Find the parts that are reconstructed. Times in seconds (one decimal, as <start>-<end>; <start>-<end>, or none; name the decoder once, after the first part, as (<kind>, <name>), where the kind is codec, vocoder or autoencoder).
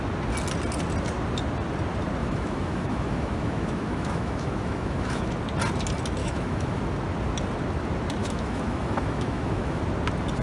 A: 2.2-5.3 (autoencoder, DAC-VAE); 6.2-6.8; 8.2-9.8